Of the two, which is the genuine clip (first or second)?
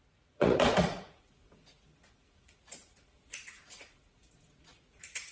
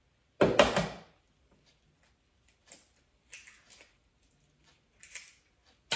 second